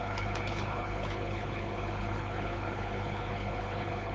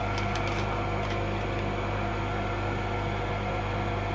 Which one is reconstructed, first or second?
first